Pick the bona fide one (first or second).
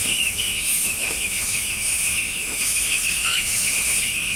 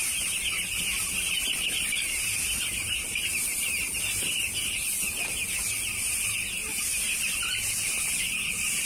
second